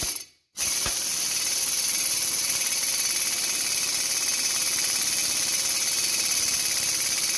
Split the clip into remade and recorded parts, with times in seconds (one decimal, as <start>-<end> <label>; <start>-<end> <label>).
0.0-7.4 recorded